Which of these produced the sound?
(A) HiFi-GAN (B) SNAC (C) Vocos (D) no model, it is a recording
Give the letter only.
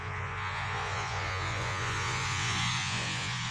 C